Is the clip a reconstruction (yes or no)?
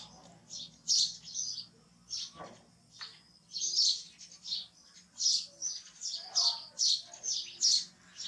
no